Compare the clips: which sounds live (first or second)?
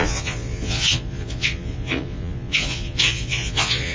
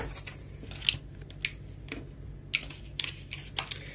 second